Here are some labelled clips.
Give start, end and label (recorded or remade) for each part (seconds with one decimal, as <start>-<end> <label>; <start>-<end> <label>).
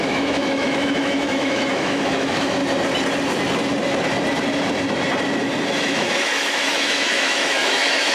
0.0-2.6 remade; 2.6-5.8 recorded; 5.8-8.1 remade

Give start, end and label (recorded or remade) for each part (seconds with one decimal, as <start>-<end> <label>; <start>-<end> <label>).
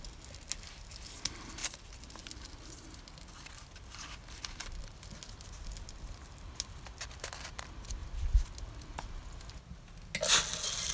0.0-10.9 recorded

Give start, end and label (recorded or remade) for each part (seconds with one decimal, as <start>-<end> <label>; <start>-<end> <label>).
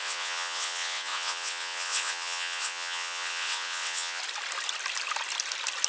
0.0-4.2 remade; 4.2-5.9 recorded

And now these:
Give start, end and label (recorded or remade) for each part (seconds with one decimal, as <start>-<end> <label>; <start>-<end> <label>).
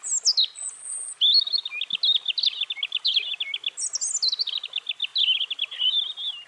0.0-6.5 recorded